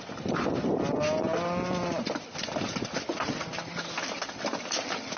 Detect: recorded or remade recorded